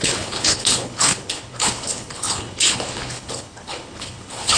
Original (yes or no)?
no